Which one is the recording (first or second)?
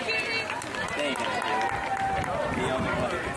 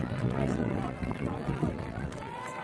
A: first